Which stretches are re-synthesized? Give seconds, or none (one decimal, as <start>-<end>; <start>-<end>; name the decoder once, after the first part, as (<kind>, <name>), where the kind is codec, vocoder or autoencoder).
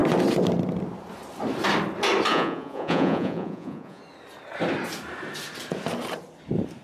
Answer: 2.3-4.0 (vocoder, Vocos)